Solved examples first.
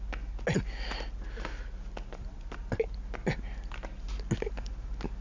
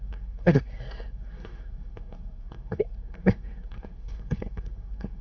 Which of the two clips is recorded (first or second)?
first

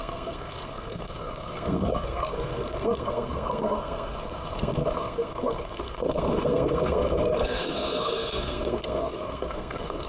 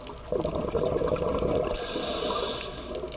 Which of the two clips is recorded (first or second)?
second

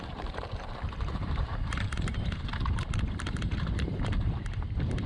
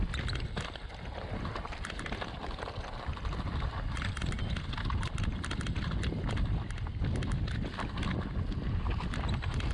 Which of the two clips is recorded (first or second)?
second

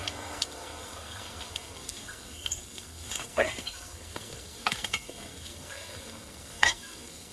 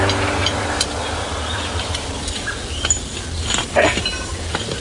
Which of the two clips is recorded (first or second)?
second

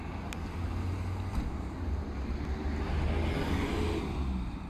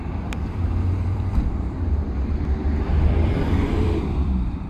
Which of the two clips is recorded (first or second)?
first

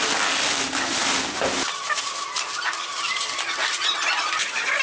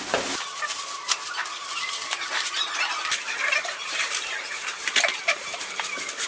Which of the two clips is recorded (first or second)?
first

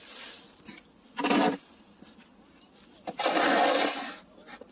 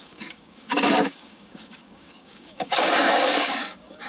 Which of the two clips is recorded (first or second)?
first